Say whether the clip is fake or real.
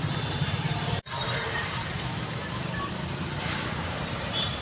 fake